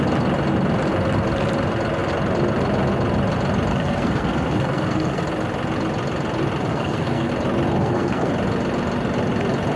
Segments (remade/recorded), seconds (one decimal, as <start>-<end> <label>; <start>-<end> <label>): 0.0-3.7 recorded; 3.7-5.2 remade; 5.2-6.7 recorded; 6.7-7.3 remade; 7.3-7.8 recorded; 7.8-8.3 remade; 8.3-9.8 recorded